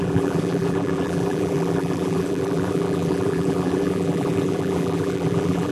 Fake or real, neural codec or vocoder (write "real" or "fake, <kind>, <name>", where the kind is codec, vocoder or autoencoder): fake, vocoder, BigVGAN v2